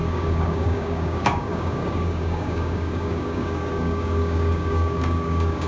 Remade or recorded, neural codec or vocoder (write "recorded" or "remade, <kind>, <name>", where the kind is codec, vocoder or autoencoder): remade, codec, DAC